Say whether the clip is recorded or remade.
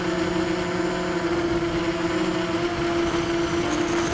recorded